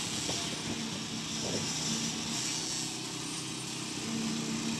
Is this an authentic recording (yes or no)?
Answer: yes